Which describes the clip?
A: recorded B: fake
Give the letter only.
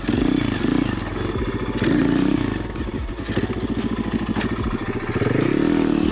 A